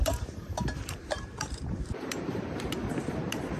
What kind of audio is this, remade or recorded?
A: remade